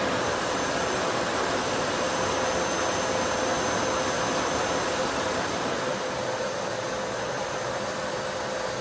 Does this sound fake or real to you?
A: real